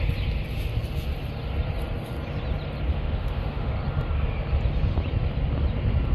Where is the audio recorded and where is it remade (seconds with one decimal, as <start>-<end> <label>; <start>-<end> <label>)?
0.0-2.9 recorded; 2.9-3.7 remade; 3.7-6.1 recorded